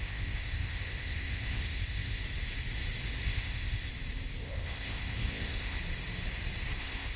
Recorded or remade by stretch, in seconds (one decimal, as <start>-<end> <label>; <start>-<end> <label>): 0.0-2.2 remade; 2.2-3.2 recorded; 3.2-3.9 remade; 3.9-4.4 recorded; 4.4-5.8 remade; 5.8-6.8 recorded; 6.8-7.2 remade